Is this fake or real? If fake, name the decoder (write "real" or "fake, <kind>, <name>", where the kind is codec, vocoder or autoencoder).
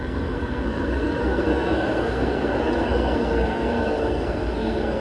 fake, codec, SNAC